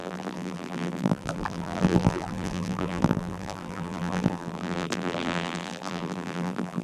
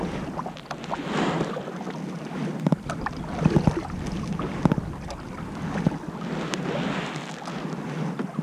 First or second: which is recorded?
second